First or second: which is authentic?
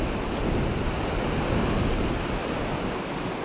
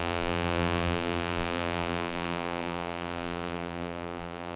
first